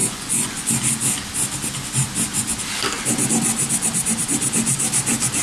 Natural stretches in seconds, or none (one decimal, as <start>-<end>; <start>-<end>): 0.7-5.4